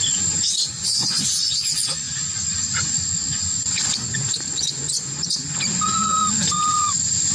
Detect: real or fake fake